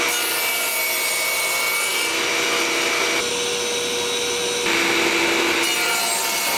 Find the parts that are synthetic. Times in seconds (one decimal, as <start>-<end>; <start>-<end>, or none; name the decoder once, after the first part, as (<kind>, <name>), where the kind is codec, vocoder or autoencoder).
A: none